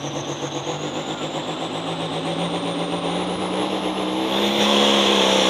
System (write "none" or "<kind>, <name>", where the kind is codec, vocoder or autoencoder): vocoder, BigVGAN v2